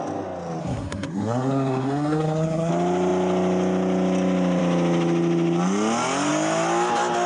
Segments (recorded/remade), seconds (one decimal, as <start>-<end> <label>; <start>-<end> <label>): 0.0-0.6 recorded; 0.6-2.7 remade; 2.7-7.3 recorded